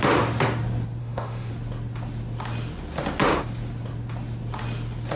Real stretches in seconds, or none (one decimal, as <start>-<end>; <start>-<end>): 0.0-1.0; 1.5-5.2